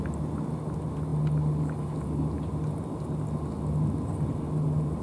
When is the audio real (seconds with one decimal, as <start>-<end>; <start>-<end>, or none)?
0.0-5.0